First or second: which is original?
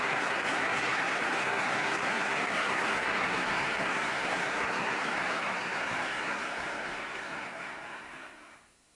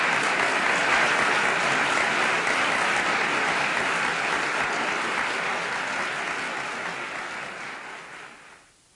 second